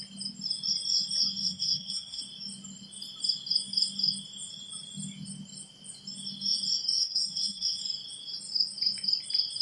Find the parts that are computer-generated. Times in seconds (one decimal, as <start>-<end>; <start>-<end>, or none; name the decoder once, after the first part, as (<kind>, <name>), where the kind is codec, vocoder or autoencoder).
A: 1.4-2.2 (codec, SNAC); 7.0-7.8